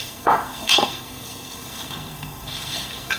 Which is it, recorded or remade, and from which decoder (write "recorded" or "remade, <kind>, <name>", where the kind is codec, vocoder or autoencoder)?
remade, codec, SNAC